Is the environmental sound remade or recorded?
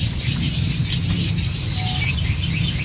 recorded